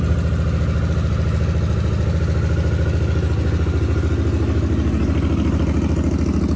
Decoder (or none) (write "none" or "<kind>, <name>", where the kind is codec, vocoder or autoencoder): none